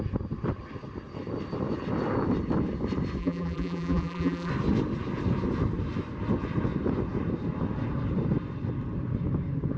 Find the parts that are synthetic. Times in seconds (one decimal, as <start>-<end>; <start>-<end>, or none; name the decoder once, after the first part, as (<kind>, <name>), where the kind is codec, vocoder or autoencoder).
3.2-4.5 (vocoder, BigVGAN v2)